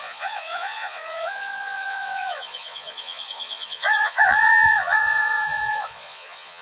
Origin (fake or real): fake